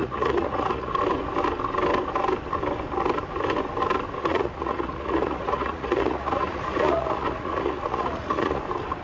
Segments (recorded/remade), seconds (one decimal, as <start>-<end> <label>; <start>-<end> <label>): 0.0-0.9 remade; 0.9-4.2 recorded; 4.2-8.6 remade; 8.6-9.0 recorded